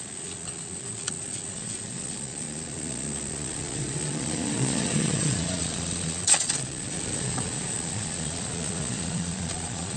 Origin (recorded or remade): remade